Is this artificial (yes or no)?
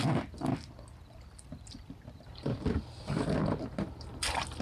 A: no